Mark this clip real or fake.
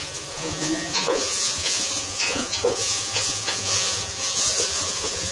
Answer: fake